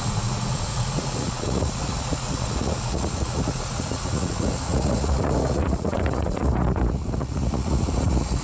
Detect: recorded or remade remade